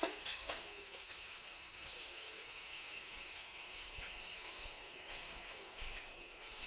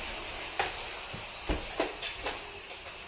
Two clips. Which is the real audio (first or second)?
second